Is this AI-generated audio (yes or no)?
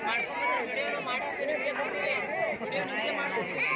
no